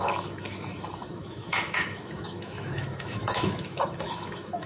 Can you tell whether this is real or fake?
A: fake